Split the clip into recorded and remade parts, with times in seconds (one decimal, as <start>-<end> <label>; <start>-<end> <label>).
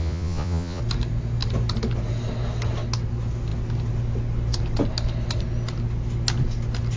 0.0-0.8 remade; 0.8-7.0 recorded